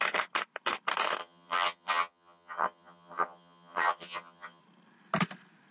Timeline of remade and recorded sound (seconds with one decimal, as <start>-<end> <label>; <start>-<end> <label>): 0.0-1.2 recorded; 1.2-4.6 remade; 4.6-5.7 recorded